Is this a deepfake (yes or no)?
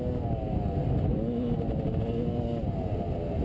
no